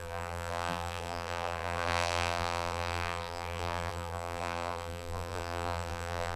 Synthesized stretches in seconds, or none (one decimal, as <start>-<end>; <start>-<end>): 0.0-6.4